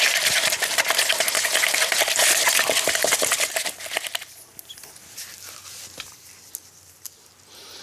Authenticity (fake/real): real